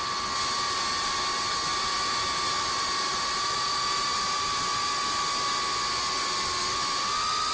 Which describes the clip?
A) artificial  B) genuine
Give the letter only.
B